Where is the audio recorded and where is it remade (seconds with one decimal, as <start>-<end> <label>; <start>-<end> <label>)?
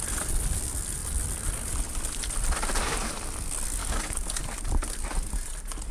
0.0-3.8 recorded; 3.8-4.3 remade; 4.3-5.9 recorded